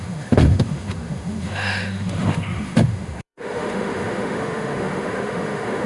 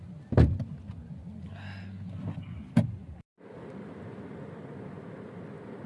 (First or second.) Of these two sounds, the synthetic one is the first